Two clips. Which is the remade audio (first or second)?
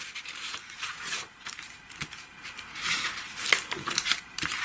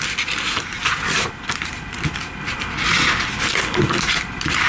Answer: first